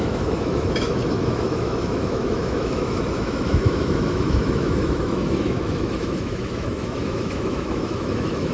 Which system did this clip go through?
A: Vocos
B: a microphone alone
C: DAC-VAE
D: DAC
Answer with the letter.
C